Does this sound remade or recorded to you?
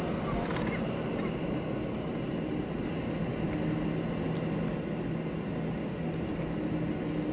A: recorded